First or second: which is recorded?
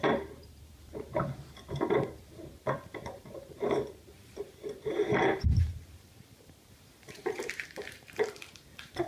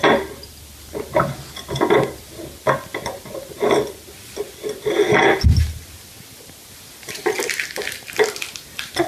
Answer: second